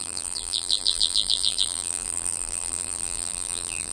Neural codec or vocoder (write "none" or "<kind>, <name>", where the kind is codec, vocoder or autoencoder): vocoder, BigVGAN v2